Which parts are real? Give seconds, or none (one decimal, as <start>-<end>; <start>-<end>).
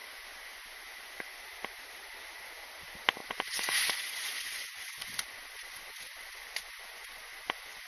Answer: 1.4-3.2